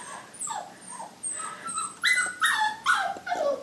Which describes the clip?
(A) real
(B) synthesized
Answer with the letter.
A